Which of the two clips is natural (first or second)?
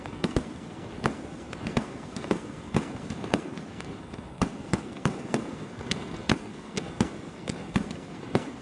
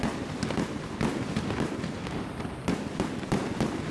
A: second